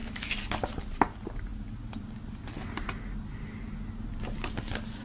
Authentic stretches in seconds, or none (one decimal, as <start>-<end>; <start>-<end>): 0.0-5.0

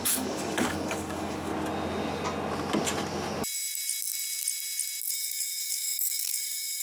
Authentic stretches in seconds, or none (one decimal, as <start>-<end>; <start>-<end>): 1.5-5.1

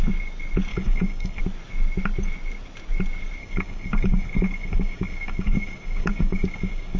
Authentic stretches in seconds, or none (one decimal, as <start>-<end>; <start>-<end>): 0.0-0.7; 1.4-3.4

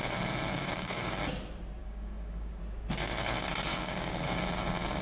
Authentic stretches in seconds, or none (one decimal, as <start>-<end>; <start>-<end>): 0.0-0.5; 1.2-1.8; 2.6-3.7; 4.4-5.0

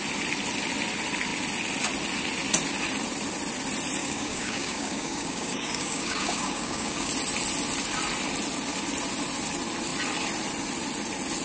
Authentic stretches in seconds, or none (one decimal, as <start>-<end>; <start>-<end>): 0.0-4.0; 7.1-11.4

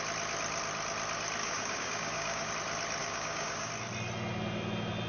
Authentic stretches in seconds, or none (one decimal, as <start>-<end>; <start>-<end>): 0.0-1.4; 2.5-3.0; 3.7-5.1